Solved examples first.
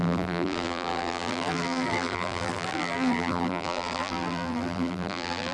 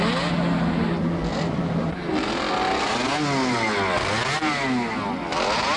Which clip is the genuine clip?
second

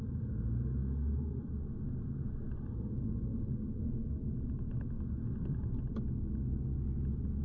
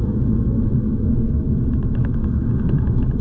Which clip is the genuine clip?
first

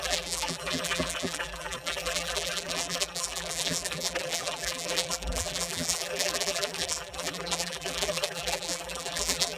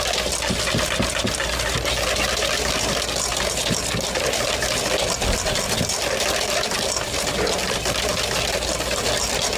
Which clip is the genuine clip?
second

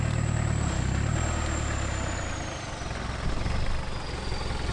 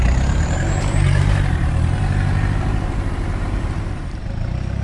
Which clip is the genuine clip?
first